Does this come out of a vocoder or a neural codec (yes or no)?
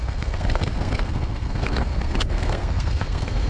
yes